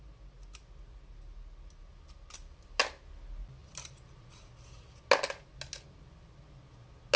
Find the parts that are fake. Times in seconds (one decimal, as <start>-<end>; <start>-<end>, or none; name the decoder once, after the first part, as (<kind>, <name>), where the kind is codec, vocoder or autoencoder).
1.8-2.8 (vocoder, BigVGAN v2); 3.6-5.0

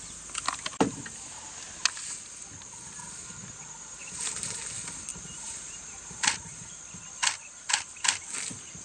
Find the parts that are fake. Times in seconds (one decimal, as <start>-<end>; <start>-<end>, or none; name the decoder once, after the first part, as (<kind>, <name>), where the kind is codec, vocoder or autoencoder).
4.0-4.6 (vocoder, BigVGAN v2); 5.1-6.8

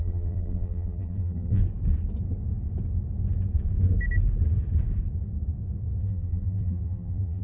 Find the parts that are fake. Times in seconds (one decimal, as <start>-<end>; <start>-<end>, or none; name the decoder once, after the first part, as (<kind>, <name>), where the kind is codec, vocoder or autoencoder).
0.0-1.6 (vocoder, BigVGAN v2); 6.0-7.4

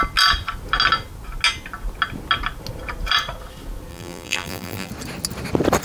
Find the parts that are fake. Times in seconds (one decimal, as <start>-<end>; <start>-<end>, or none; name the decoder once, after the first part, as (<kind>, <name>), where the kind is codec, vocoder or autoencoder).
3.9-4.9 (vocoder, BigVGAN v2)

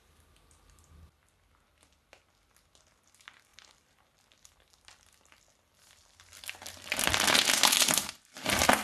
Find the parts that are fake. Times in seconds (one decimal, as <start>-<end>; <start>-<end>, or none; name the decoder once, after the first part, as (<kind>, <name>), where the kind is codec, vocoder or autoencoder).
3.5-7.1 (vocoder, BigVGAN v2)